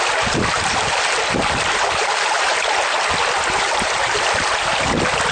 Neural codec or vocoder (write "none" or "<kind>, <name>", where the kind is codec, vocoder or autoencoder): none